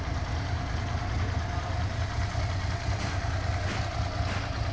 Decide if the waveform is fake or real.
real